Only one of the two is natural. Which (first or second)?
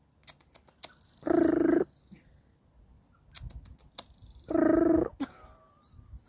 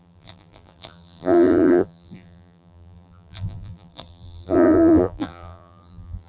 first